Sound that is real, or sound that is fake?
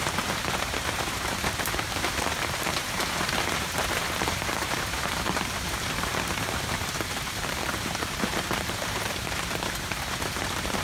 fake